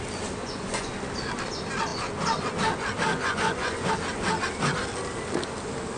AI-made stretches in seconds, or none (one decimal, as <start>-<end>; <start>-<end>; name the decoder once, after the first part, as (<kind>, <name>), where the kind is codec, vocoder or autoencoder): 0.4-0.9 (vocoder, Vocos); 3.1-3.9